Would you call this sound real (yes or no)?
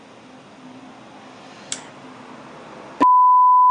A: yes